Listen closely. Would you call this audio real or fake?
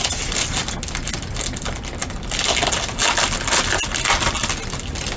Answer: real